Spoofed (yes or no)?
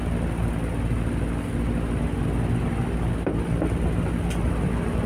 no